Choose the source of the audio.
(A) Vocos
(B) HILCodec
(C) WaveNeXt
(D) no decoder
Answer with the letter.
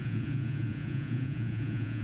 A